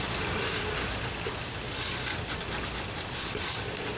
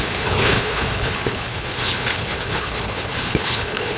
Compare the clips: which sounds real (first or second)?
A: first